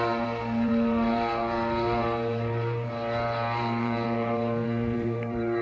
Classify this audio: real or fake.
fake